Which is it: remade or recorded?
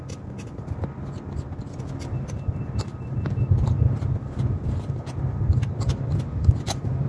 recorded